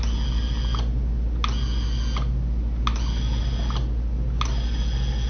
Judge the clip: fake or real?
real